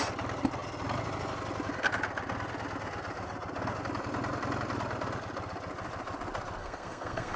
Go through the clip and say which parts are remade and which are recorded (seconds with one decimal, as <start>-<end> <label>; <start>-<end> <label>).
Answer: 0.0-6.6 recorded; 6.6-7.4 remade